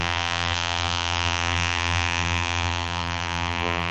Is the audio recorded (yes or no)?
no